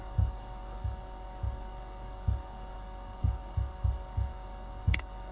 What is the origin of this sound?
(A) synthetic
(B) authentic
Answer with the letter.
A